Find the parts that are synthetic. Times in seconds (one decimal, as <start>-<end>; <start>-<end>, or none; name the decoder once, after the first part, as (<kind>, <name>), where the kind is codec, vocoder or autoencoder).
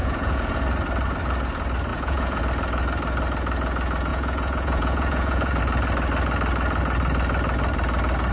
0.0-0.6 (vocoder, Vocos); 1.9-2.4; 4.1-5.6